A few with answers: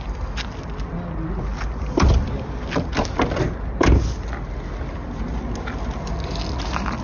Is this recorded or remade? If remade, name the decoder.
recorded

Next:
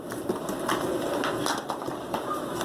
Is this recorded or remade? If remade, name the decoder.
recorded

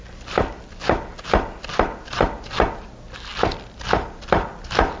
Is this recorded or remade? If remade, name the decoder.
recorded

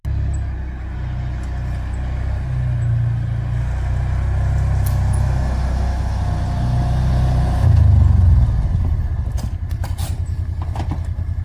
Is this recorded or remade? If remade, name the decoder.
recorded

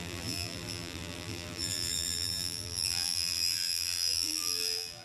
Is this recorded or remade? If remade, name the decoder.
remade, vocoder, BigVGAN v2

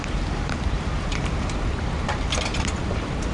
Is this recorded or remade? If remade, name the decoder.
remade, vocoder, BigVGAN v2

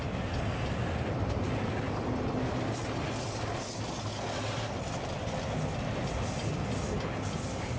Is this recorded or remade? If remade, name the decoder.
recorded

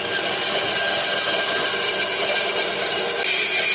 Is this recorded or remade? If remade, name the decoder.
recorded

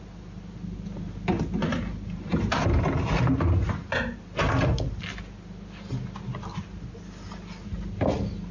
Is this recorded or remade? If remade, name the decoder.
recorded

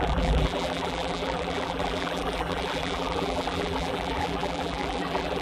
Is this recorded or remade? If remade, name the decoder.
remade, vocoder, BigVGAN v2